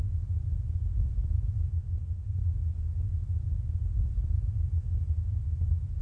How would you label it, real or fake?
real